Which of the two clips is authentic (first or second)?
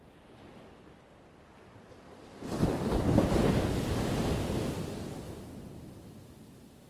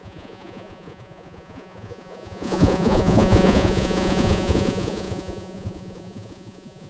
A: first